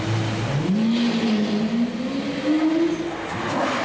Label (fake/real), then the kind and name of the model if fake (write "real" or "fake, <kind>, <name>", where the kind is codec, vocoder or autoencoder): real